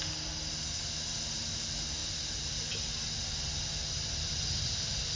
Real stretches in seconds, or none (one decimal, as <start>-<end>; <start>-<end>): 0.0-5.2